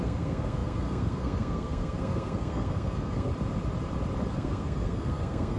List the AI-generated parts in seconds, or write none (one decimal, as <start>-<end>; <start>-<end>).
0.0-3.3; 4.3-5.6